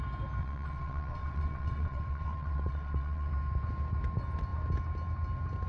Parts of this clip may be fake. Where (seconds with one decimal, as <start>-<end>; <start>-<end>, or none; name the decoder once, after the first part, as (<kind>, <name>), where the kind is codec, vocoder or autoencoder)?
0.4-3.3 (vocoder, WaveNeXt)